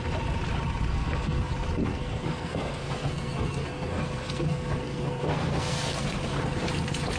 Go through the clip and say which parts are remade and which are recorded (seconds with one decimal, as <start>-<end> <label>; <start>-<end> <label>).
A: 0.0-0.9 recorded; 0.9-1.5 remade; 1.5-1.9 recorded; 1.9-6.2 remade; 6.2-7.2 recorded